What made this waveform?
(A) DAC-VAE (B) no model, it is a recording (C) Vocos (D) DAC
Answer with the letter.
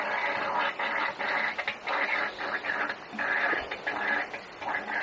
B